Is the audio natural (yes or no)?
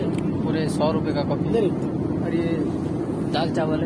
yes